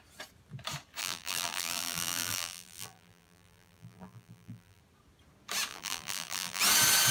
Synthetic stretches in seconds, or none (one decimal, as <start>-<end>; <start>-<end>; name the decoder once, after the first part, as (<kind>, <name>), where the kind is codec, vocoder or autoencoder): 1.0-4.8 (vocoder, BigVGAN v2); 5.7-6.6